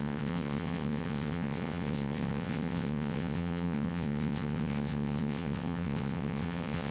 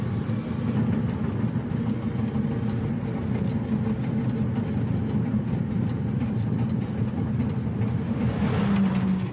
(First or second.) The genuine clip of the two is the second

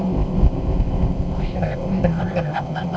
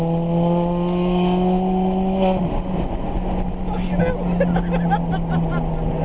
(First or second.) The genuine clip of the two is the second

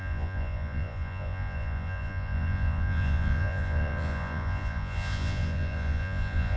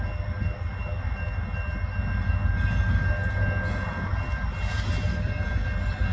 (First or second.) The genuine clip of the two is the second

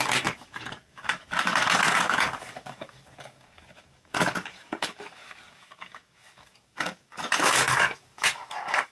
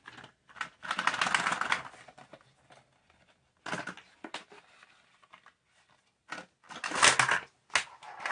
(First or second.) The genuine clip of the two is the second